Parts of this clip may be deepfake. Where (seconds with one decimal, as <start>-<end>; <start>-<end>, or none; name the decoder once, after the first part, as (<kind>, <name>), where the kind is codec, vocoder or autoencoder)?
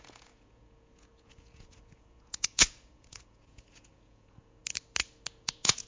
0.0-4.6 (vocoder, Vocos); 5.3-5.9